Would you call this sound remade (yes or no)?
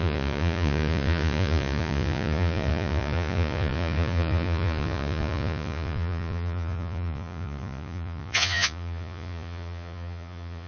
yes